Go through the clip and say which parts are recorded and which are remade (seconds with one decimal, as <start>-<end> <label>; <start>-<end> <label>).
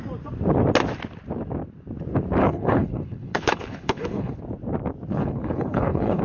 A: 0.0-2.4 recorded; 2.4-4.4 remade; 4.4-5.1 recorded; 5.1-6.2 remade